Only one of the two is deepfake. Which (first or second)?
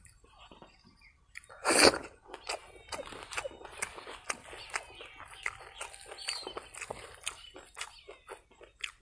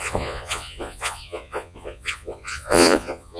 second